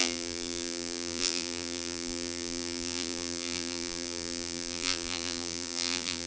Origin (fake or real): fake